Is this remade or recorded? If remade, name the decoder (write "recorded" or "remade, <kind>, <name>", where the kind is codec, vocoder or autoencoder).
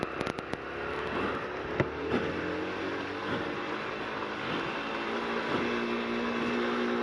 recorded